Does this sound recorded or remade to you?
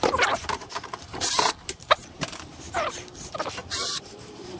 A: remade